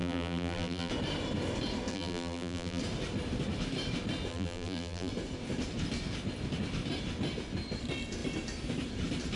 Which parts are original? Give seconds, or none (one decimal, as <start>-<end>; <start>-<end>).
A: 0.9-1.9; 2.8-4.3; 5.1-9.4